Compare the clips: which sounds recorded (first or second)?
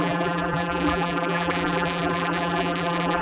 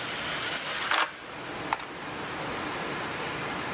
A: second